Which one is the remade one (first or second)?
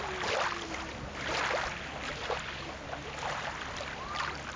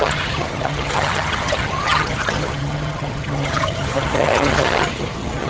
second